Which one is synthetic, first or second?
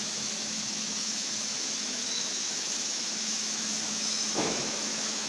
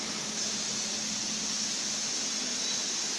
first